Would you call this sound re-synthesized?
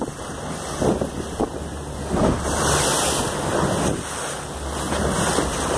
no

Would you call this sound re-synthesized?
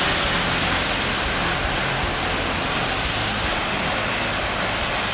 no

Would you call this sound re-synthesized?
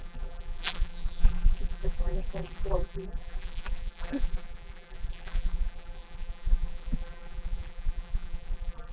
yes